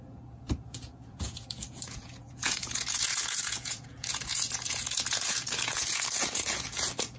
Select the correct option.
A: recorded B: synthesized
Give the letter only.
B